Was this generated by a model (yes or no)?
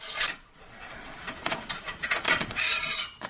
yes